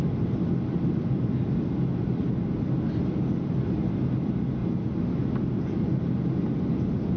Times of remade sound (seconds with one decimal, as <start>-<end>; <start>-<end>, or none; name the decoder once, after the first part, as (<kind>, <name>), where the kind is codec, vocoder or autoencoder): none